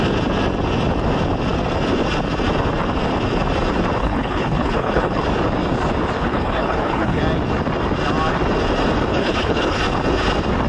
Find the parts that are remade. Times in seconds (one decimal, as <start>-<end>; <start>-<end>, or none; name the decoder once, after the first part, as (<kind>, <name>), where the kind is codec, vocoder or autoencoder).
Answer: 4.0-5.2 (codec, HILCodec); 6.2-7.2; 9.1-9.8